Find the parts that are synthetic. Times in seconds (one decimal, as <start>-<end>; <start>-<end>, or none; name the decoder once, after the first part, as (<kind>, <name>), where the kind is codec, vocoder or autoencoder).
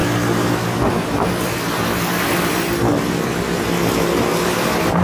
none